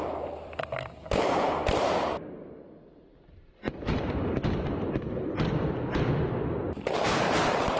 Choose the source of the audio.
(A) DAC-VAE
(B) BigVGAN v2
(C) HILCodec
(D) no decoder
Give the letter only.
B